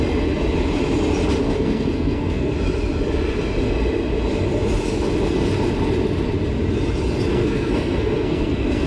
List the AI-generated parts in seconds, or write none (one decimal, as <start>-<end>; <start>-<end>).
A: 1.4-2.5; 7.3-8.9